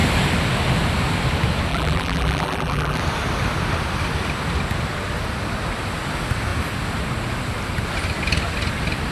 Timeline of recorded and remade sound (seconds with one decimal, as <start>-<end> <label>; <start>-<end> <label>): 0.0-1.7 recorded; 1.7-3.0 remade; 3.0-9.1 recorded